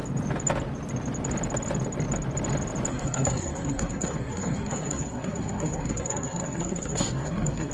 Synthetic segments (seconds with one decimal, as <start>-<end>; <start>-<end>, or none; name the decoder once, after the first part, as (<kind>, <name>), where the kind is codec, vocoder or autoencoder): 2.9-7.7 (codec, SNAC)